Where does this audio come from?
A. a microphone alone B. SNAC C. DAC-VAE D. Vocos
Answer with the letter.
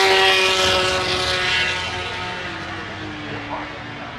A